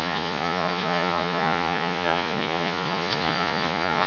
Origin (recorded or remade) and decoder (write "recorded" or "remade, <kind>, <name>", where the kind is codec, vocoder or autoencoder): remade, vocoder, Vocos